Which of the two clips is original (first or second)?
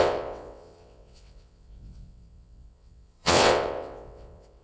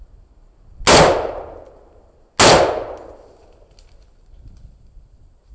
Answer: second